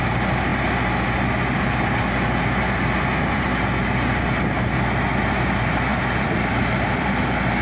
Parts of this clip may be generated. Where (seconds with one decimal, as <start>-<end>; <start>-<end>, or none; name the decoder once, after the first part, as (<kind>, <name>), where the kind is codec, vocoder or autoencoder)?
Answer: 5.9-7.1 (vocoder, BigVGAN v2)